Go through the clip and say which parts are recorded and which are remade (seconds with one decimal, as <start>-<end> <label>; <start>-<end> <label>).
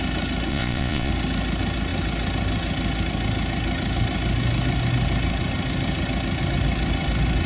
0.0-0.5 recorded; 0.5-1.1 remade; 1.1-7.5 recorded